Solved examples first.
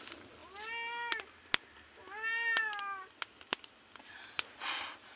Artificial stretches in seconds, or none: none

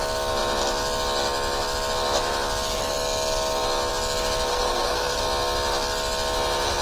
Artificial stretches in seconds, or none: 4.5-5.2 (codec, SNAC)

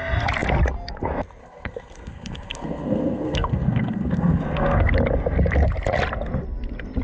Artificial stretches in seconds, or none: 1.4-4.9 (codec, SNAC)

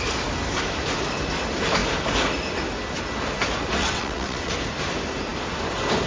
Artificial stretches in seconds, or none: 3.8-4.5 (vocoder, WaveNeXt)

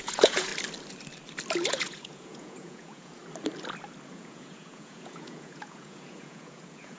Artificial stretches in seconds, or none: 0.0-0.5 (vocoder, Vocos); 1.7-3.2; 4.1-7.0